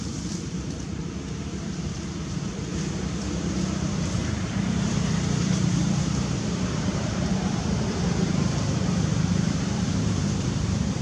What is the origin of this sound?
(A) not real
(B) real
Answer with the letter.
A